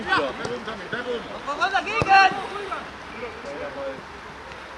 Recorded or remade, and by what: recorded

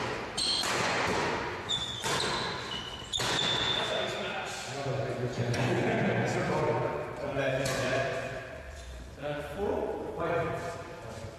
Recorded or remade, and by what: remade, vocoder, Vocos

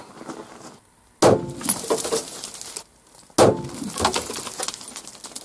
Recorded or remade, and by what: recorded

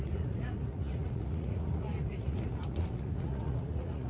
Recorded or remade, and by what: remade, vocoder, Vocos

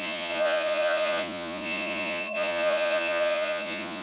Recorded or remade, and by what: remade, vocoder, Vocos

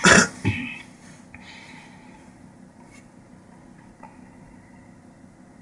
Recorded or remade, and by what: recorded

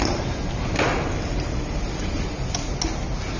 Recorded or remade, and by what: recorded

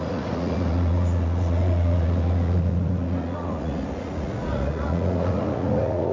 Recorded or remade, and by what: remade, vocoder, Vocos